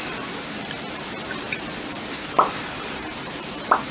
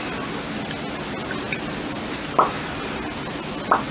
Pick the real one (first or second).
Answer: second